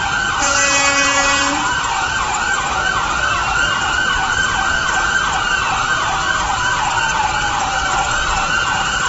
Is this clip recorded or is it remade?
remade